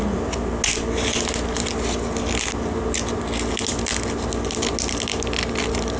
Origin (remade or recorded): recorded